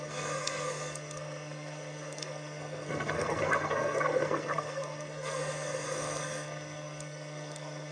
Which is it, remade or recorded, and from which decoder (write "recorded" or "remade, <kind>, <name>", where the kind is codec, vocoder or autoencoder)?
remade, codec, SNAC